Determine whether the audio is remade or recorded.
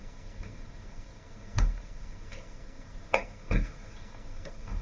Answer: remade